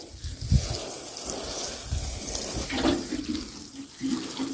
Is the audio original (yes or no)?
yes